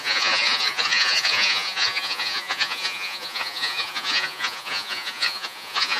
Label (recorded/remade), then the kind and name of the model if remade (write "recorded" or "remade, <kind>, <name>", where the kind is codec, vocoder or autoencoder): remade, vocoder, Vocos